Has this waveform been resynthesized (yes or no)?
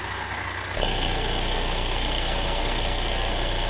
yes